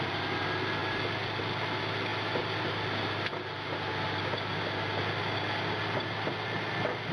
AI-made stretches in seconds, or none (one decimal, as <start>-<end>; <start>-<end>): 0.8-1.4; 2.1-2.7